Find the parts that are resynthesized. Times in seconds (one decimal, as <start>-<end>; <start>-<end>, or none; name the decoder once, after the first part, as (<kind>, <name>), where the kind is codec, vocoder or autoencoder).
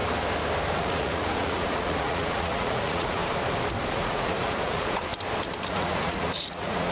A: 0.8-3.2 (vocoder, Vocos); 3.9-5.1; 5.7-6.9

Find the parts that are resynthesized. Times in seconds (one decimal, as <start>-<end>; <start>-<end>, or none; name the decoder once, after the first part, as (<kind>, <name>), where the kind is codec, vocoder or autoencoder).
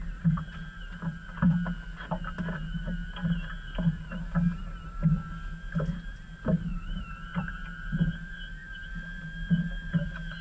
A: 6.7-8.9 (vocoder, BigVGAN v2)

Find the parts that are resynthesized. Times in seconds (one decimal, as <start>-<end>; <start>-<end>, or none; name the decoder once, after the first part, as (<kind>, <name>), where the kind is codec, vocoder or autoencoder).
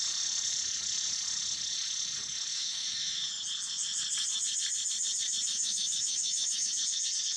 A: 2.5-3.2 (autoencoder, DAC-VAE); 5.5-6.7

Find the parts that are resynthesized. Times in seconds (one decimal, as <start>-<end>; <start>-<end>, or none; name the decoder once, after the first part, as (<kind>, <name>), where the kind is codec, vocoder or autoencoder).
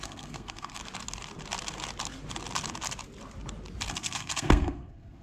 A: 0.0-0.8 (codec, SNAC); 3.9-5.2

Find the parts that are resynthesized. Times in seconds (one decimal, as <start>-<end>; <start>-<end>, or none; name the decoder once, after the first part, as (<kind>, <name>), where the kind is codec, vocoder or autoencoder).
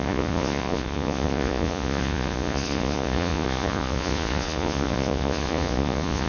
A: 0.0-6.3 (vocoder, Vocos)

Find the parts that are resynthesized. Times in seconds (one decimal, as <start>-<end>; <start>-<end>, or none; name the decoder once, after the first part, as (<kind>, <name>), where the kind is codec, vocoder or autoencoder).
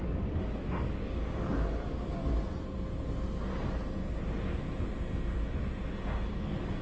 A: 0.0-2.2 (codec, DAC); 6.3-6.8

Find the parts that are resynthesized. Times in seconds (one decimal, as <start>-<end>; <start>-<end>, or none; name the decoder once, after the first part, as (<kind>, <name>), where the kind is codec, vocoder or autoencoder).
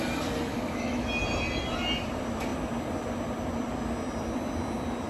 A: 0.5-1.1 (autoencoder, DAC-VAE)